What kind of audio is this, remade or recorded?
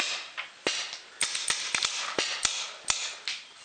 recorded